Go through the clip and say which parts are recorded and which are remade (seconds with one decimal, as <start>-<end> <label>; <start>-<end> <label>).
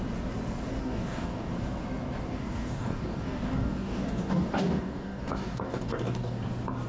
0.0-0.8 recorded; 0.8-1.5 remade; 1.5-2.3 recorded; 2.3-6.4 remade; 6.4-6.9 recorded